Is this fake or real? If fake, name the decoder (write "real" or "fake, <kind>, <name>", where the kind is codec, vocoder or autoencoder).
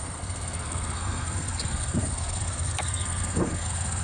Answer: fake, codec, SNAC